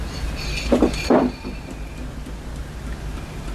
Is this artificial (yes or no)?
no